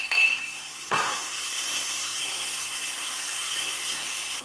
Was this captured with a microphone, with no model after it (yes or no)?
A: no